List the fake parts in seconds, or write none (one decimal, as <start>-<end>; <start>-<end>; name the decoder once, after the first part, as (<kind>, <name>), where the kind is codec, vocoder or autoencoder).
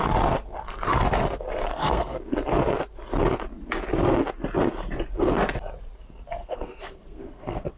1.7-2.2 (codec, SNAC); 6.4-7.8